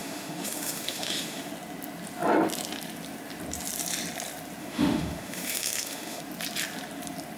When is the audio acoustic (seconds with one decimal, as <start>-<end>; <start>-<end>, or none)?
1.5-4.6; 6.2-7.4